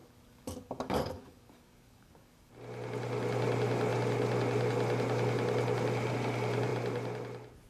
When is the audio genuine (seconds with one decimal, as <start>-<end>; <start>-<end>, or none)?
2.5-7.7